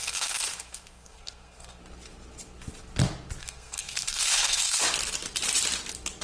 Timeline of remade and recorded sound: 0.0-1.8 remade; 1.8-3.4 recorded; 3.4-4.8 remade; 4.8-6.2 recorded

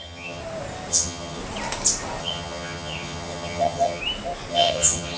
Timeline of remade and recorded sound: 0.0-0.4 remade; 0.4-0.9 recorded; 0.9-1.4 remade; 1.4-2.2 recorded; 2.2-4.0 remade; 4.0-4.5 recorded; 4.5-5.2 remade

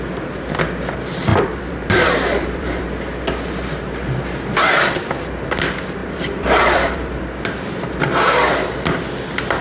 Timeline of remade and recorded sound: 0.0-1.3 recorded; 1.3-2.8 remade; 2.8-6.0 recorded; 6.0-7.2 remade; 7.2-9.6 recorded

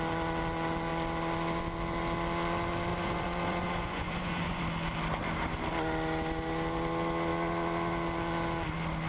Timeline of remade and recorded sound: 0.0-2.9 recorded; 2.9-4.6 remade; 4.6-9.1 recorded

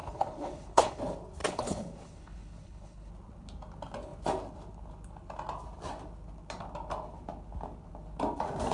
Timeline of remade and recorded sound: 0.0-1.0 remade; 1.0-1.4 recorded; 1.4-3.1 remade; 3.1-8.7 recorded

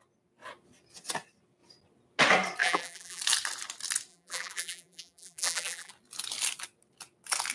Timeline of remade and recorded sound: 0.0-2.6 recorded; 2.6-3.2 remade; 3.2-4.1 recorded; 4.1-5.9 remade; 5.9-7.5 recorded

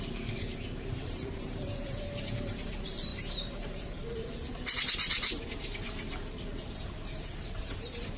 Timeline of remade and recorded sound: 0.0-8.2 remade

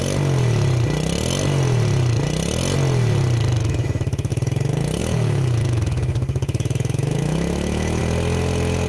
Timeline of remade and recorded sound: 0.0-3.6 recorded; 3.6-4.3 remade; 4.3-5.0 recorded; 5.0-8.0 remade; 8.0-8.9 recorded